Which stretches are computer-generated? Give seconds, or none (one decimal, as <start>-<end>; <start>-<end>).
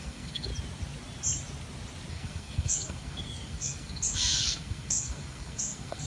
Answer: 0.0-0.5; 2.1-6.1